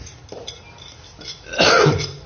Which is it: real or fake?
real